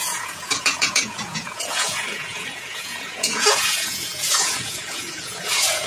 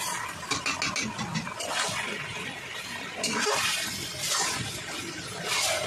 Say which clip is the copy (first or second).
first